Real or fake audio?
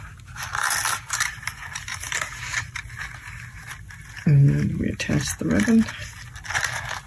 real